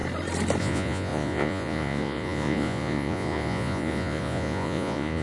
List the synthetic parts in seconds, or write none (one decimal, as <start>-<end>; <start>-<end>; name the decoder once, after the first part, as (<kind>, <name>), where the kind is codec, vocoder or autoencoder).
0.6-5.2 (vocoder, Vocos)